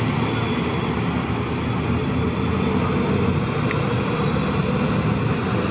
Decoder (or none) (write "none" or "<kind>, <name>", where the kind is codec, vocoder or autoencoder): none